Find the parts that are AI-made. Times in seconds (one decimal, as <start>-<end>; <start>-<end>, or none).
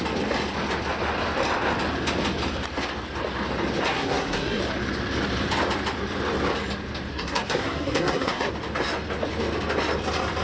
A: 3.9-4.6; 7.1-8.5